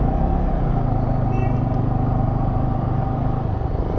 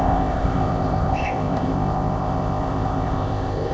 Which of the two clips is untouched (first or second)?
first